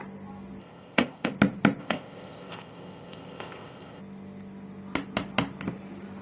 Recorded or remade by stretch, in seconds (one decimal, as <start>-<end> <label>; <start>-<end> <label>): 0.0-0.6 recorded; 0.6-1.3 remade; 1.3-1.8 recorded; 1.8-4.0 remade; 4.0-6.2 recorded